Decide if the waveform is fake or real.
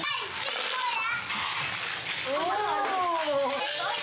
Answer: real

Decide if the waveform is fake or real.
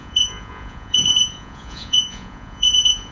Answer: fake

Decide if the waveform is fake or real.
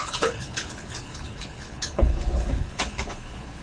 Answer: fake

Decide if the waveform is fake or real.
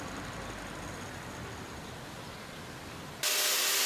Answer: real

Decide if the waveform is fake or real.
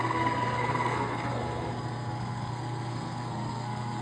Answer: fake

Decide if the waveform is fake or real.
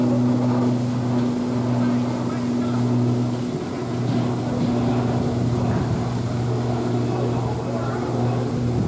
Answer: real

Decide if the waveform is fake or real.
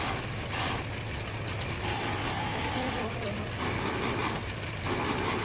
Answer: real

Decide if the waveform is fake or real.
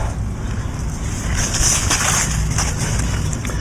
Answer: fake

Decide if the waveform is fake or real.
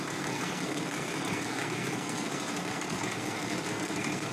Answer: fake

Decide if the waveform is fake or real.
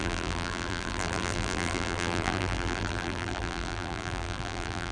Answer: fake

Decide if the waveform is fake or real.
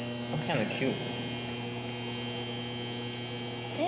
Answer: real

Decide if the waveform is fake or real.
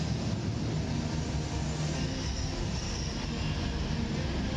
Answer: real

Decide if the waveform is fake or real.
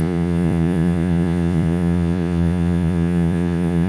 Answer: fake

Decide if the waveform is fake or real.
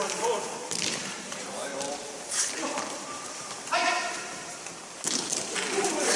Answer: fake